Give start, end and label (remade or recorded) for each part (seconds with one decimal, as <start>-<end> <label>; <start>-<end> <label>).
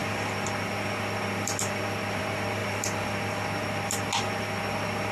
0.0-5.1 recorded